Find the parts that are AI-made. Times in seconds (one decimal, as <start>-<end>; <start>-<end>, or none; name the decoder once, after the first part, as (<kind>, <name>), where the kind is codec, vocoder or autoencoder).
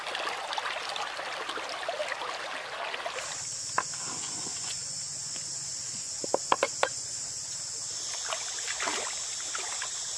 4.2-6.1 (vocoder, Vocos); 6.9-7.6